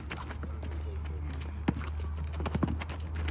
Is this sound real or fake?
real